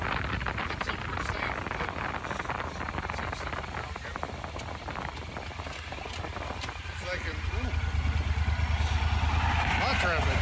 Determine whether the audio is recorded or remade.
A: recorded